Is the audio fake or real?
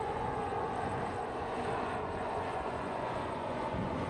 fake